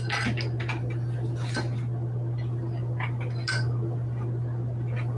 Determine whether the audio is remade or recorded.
recorded